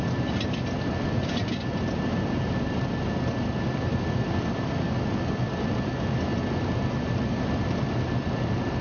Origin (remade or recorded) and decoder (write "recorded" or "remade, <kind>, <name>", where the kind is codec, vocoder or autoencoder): recorded